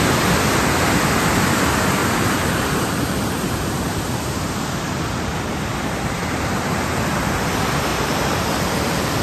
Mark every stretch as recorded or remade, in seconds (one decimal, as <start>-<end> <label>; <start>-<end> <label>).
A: 0.0-2.0 recorded; 2.0-6.5 remade; 6.5-7.9 recorded; 7.9-8.7 remade; 8.7-9.2 recorded